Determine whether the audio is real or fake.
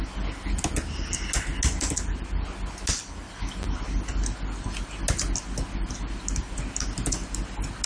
real